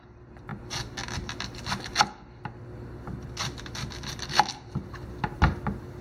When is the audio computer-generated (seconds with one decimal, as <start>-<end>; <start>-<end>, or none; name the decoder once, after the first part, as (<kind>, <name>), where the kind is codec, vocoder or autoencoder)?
none